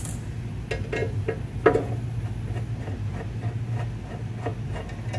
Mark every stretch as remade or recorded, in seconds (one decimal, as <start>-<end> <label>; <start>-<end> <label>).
0.0-5.2 recorded